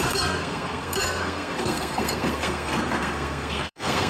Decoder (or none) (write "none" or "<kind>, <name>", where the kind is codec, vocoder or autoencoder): codec, SNAC